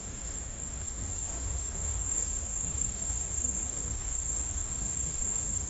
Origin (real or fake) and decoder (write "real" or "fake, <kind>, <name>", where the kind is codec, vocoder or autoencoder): fake, codec, DAC